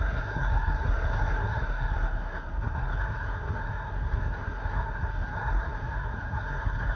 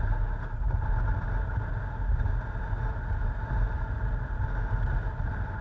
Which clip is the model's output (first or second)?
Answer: first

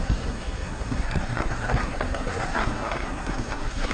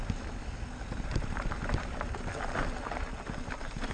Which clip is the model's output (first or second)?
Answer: first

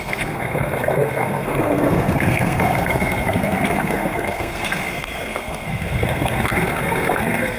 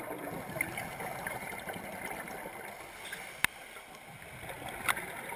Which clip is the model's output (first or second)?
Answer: first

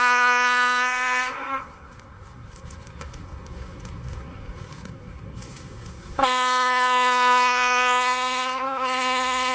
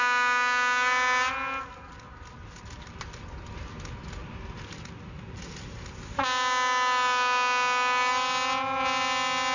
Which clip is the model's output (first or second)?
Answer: first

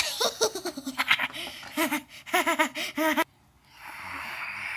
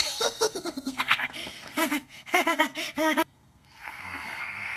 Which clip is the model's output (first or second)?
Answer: second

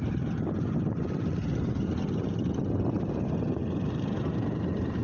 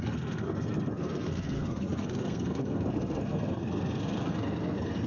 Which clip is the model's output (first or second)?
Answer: second